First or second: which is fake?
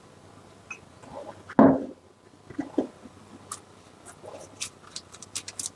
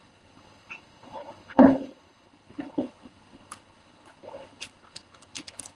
second